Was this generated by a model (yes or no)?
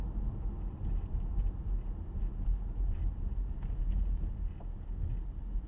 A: no